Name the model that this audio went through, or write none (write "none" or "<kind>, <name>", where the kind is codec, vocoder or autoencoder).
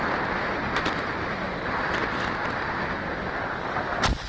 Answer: none